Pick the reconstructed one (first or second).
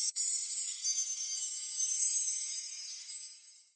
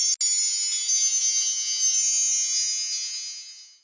first